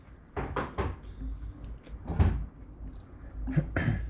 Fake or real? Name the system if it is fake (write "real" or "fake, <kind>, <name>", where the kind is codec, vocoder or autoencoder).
real